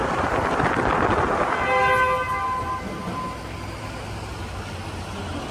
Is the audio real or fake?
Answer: real